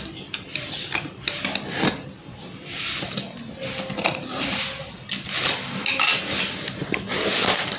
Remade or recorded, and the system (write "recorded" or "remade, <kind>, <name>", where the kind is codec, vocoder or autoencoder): recorded